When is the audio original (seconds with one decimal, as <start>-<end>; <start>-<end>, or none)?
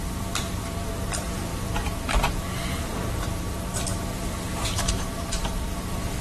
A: none